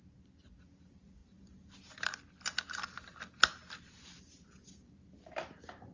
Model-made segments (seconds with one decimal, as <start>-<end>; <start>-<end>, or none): 1.2-1.7